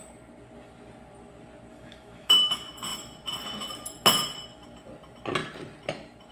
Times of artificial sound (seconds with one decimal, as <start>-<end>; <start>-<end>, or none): 1.7-2.5